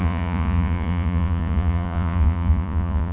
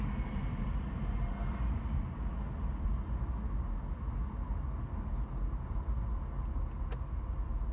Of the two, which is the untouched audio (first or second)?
second